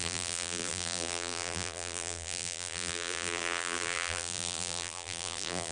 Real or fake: fake